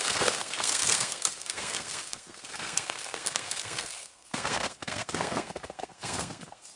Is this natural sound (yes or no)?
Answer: no